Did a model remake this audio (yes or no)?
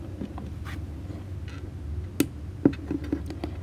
no